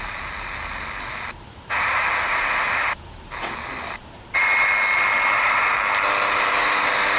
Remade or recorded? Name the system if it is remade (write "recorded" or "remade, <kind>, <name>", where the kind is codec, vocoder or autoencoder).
recorded